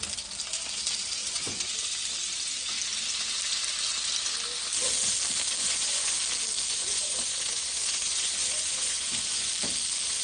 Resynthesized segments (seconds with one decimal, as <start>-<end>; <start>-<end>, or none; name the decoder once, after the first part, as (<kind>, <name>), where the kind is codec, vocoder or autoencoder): 1.2-1.7 (vocoder, Vocos); 5.6-6.2; 6.7-9.5